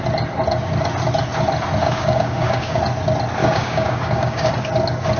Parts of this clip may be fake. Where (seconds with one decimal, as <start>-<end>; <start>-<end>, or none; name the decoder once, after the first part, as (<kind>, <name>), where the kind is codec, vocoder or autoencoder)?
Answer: 1.8-2.8 (codec, DAC); 3.4-4.5